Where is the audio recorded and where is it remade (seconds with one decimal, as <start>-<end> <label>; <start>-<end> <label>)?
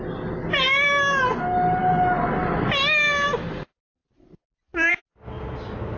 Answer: 0.0-6.0 recorded